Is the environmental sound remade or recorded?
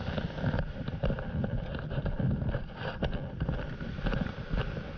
recorded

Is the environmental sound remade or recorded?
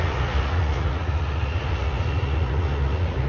remade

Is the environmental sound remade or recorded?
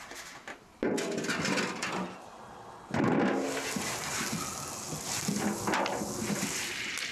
recorded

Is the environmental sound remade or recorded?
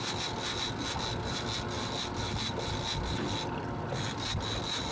recorded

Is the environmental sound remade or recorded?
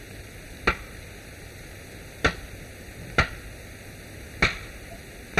recorded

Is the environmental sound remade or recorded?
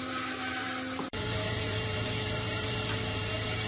remade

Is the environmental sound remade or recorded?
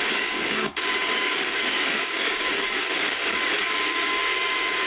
remade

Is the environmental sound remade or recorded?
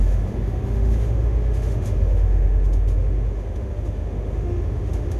remade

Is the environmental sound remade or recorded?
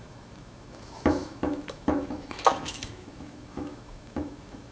remade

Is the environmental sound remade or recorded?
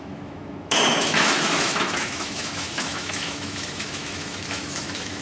remade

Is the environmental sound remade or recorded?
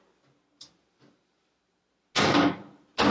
recorded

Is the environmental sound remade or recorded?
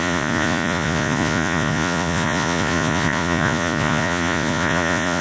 remade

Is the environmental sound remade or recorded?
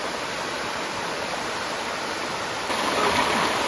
recorded